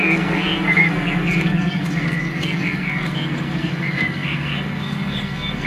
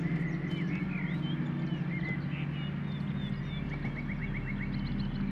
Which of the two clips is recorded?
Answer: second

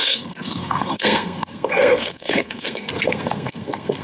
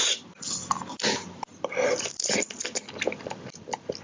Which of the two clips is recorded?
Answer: second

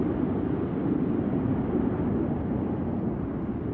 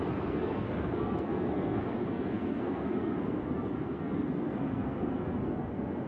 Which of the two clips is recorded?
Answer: first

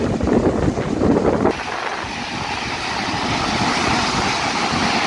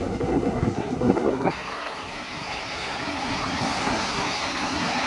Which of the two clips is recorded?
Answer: first